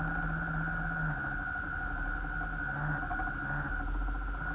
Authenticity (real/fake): real